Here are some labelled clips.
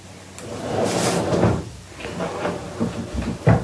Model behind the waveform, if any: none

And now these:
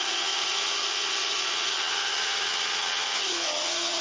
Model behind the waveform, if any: vocoder, HiFi-GAN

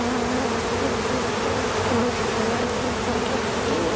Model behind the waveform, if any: none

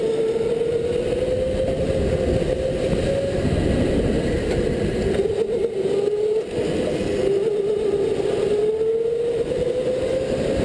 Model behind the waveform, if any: none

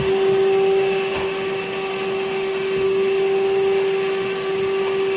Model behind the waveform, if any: none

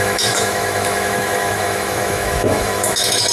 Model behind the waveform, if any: autoencoder, DAC-VAE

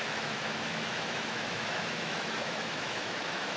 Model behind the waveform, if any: autoencoder, DAC-VAE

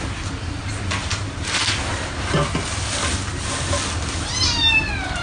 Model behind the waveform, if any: none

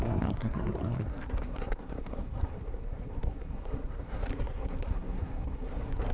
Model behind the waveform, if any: codec, SNAC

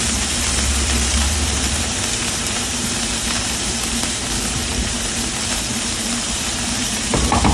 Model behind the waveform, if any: vocoder, BigVGAN v2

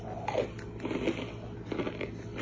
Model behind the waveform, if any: none